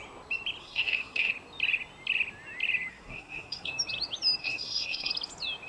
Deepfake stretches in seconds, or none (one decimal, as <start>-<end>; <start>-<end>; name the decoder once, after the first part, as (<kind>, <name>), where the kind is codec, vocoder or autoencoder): 0.6-1.3 (codec, SNAC); 2.9-3.7; 4.4-5.1